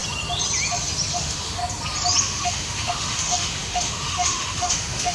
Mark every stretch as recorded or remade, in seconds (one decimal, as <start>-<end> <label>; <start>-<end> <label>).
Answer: 0.0-1.1 recorded; 1.1-1.6 remade; 1.6-2.2 recorded; 2.2-5.1 remade